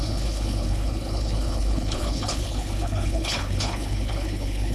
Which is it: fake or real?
fake